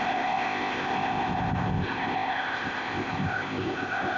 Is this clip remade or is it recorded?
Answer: remade